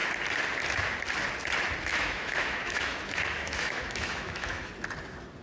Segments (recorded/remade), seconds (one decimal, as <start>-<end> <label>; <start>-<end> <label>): 0.0-1.8 recorded; 1.8-4.7 remade; 4.7-5.4 recorded